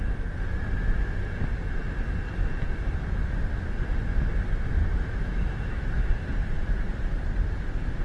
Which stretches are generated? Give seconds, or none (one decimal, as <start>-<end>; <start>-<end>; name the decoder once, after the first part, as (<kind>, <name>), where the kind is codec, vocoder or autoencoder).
4.8-6.1 (autoencoder, DAC-VAE)